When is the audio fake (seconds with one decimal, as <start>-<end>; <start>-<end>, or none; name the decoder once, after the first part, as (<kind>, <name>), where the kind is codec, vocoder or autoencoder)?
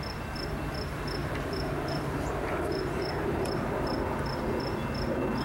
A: 1.2-3.7 (vocoder, BigVGAN v2)